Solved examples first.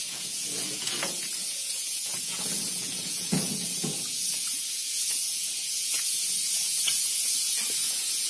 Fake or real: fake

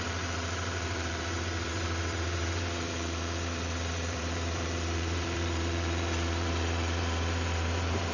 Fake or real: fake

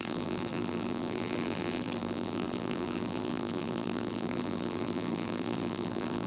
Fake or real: fake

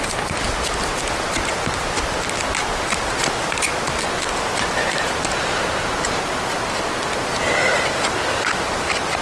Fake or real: real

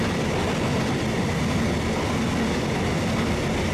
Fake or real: real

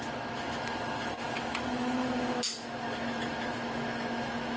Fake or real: fake